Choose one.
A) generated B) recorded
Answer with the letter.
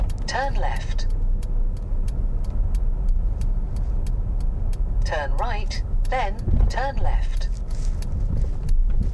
B